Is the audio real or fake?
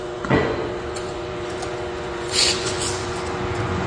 fake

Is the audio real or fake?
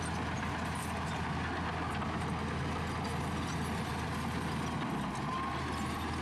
real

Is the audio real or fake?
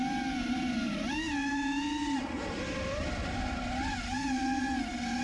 real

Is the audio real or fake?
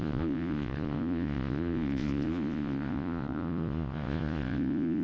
fake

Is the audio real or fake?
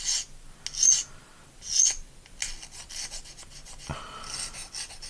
real